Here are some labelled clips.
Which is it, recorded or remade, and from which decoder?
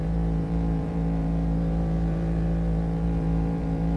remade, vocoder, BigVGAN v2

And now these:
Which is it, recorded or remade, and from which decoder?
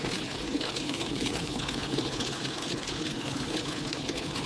remade, codec, HILCodec